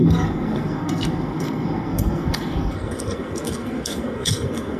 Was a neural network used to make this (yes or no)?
yes